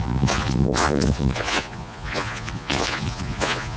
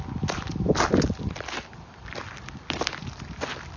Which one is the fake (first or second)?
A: first